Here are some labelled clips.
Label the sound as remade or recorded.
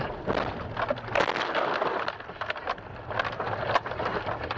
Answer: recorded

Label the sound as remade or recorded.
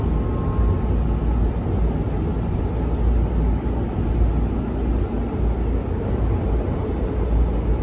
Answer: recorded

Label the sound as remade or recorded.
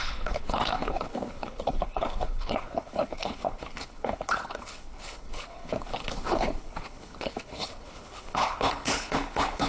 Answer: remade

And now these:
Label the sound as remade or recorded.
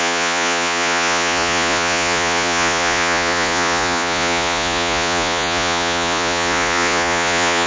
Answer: remade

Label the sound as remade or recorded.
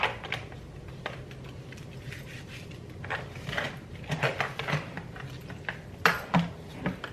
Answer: recorded